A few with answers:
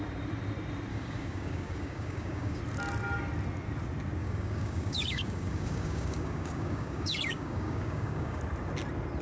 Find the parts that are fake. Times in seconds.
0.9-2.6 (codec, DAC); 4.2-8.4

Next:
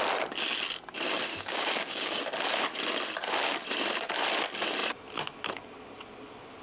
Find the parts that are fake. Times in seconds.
1.3-2.2 (codec, DAC)

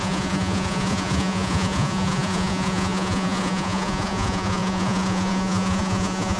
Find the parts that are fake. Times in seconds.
0.0-6.4 (vocoder, Vocos)

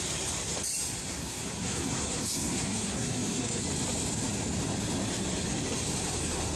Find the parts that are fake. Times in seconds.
1.1-3.6 (codec, SNAC)

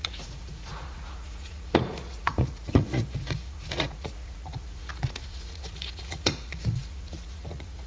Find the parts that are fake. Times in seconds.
0.0-7.9 (vocoder, Vocos)

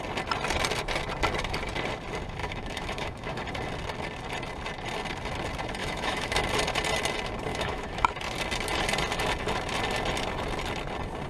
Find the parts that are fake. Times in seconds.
2.4-3.4 (autoencoder, DAC-VAE); 5.8-6.4; 7.5-8.1